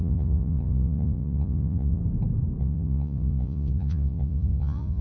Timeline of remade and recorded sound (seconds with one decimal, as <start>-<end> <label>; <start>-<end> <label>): 0.0-2.0 remade; 2.0-2.6 recorded; 2.6-5.0 remade